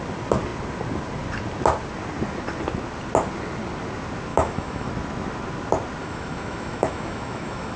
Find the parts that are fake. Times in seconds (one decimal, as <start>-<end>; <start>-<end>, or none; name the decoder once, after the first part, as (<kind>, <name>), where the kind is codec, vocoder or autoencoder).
4.3-4.9 (autoencoder, DAC-VAE); 6.0-7.8